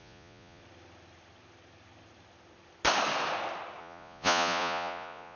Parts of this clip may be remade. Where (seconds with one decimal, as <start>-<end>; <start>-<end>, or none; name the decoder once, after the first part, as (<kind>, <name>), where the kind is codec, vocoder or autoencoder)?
0.0-0.6 (vocoder, Vocos); 3.8-5.4